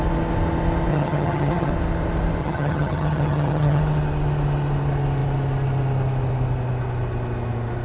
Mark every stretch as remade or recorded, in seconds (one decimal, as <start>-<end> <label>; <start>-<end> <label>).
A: 0.0-0.9 recorded; 0.9-1.7 remade; 1.7-2.4 recorded; 2.4-3.8 remade; 3.8-7.8 recorded